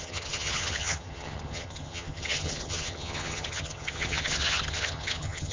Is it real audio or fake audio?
fake